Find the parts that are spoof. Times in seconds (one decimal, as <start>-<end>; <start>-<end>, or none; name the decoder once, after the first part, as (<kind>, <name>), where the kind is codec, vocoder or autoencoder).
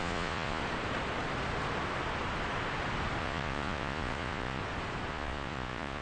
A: 0.0-0.6 (vocoder, Vocos); 3.2-4.6; 5.1-6.0